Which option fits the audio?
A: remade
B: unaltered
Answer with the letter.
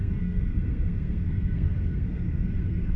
A